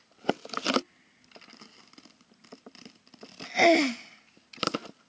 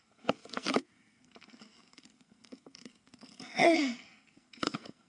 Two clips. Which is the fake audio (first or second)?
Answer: second